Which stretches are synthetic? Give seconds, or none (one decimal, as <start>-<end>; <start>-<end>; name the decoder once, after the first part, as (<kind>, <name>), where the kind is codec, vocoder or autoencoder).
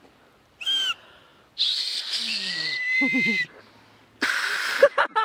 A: none